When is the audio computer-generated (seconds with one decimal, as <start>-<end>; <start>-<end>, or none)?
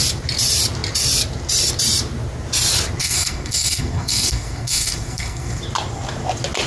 3.0-5.6